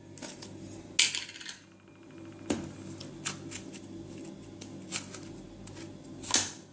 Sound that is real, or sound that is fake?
real